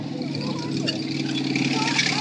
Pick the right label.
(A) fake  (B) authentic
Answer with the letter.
B